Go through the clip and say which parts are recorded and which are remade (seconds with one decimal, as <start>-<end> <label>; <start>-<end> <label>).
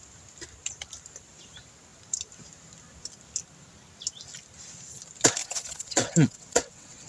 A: 0.0-5.4 recorded; 5.4-7.1 remade